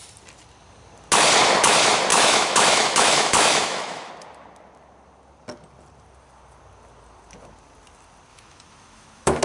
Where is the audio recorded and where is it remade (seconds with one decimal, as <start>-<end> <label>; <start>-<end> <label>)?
0.0-2.1 recorded; 2.1-4.1 remade; 4.1-8.3 recorded; 8.3-9.4 remade